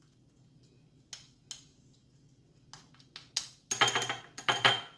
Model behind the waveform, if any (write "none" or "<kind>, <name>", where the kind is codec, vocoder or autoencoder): none